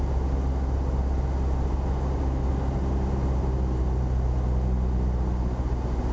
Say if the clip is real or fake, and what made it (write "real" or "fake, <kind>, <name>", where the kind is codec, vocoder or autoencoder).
real